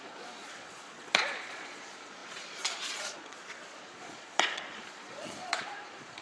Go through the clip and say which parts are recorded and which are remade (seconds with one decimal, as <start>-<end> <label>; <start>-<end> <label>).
0.0-6.2 remade